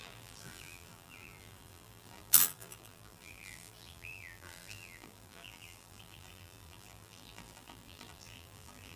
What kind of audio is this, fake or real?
fake